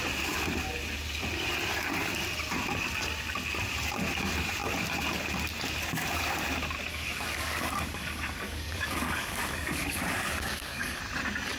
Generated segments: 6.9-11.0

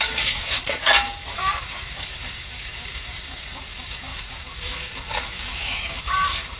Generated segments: 0.0-6.6